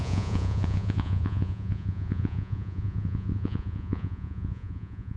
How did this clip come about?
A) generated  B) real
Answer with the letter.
A